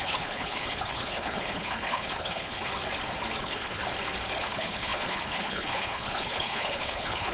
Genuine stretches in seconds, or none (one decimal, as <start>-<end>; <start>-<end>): 2.7-3.4; 3.8-4.4